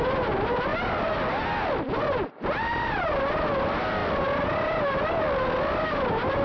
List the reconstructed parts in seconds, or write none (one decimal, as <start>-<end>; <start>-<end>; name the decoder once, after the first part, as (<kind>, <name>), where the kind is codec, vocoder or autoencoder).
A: none